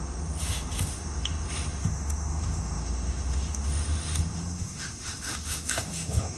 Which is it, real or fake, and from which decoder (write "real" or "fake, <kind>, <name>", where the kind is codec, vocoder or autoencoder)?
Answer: fake, autoencoder, DAC-VAE